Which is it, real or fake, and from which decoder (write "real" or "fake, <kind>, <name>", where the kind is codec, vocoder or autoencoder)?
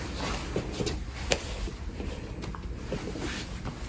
real